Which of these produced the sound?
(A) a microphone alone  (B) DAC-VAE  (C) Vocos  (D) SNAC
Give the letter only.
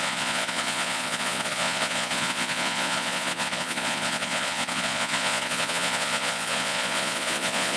C